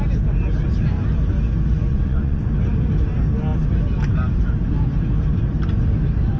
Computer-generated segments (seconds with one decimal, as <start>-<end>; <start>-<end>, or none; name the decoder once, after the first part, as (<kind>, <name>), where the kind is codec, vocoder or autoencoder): 1.9-2.4 (vocoder, Vocos)